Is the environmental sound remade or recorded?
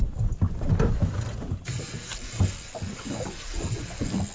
recorded